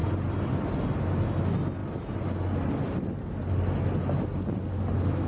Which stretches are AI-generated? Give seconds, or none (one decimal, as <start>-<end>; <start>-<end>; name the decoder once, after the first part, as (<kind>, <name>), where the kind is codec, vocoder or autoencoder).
none